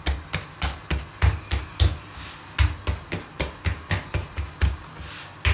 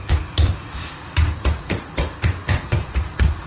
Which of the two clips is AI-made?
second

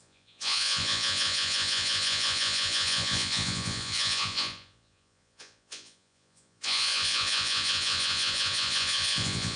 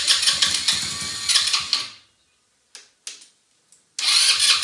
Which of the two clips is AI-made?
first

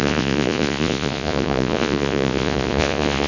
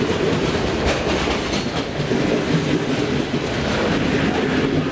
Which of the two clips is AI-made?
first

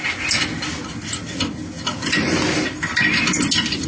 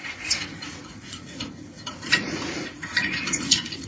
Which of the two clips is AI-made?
second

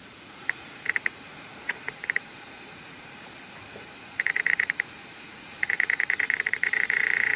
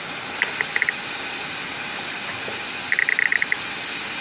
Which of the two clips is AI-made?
first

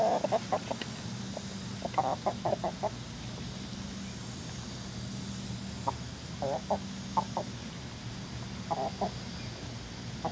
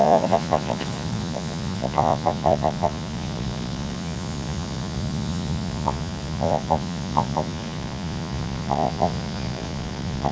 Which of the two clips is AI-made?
second